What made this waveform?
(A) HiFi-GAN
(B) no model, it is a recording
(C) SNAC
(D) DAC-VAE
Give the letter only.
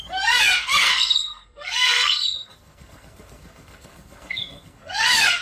C